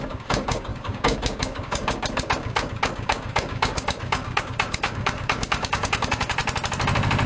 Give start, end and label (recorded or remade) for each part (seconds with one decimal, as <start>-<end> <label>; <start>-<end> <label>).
0.0-6.4 remade; 6.4-7.3 recorded